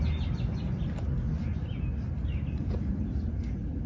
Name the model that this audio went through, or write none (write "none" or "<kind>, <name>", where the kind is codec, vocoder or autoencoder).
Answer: none